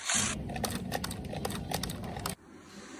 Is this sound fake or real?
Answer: real